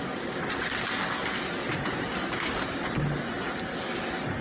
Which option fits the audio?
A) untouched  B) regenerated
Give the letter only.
A